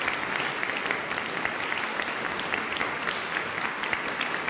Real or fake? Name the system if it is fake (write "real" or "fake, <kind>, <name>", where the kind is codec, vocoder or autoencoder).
real